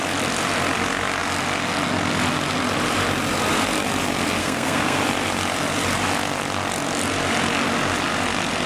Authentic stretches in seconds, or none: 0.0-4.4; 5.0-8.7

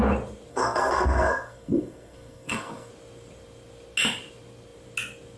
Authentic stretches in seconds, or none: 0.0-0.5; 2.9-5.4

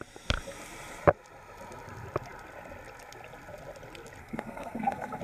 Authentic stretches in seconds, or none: 0.0-4.2

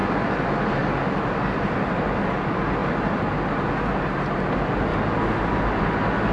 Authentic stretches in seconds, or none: 0.0-6.3

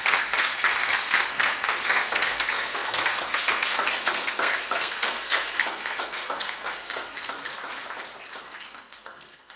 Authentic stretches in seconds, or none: 7.3-8.4